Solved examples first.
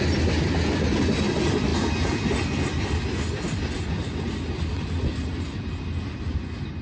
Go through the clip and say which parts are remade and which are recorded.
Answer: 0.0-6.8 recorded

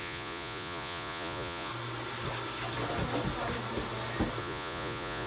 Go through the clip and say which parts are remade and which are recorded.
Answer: 0.0-1.7 remade; 1.7-4.4 recorded; 4.4-5.3 remade

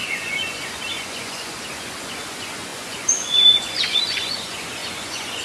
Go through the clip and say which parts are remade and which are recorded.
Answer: 0.0-5.4 remade

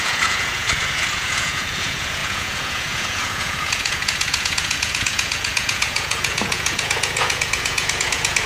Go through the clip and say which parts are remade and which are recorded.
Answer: 0.0-8.5 remade